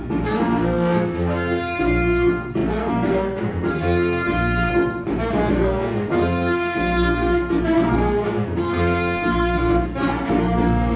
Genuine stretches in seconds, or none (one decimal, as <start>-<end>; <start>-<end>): 4.7-5.5